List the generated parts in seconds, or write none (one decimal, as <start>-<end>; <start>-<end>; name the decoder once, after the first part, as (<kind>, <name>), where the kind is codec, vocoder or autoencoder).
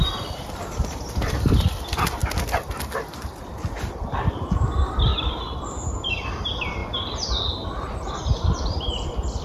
0.0-2.2 (vocoder, BigVGAN v2); 3.8-5.1; 6.1-6.8; 8.9-9.4